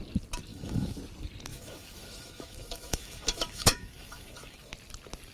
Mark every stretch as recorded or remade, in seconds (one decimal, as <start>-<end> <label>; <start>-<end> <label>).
0.0-0.5 recorded; 0.5-1.0 remade; 1.0-1.5 recorded; 1.5-4.7 remade; 4.7-5.3 recorded